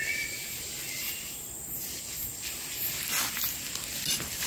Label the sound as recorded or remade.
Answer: recorded